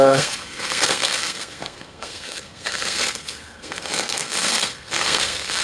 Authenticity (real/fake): fake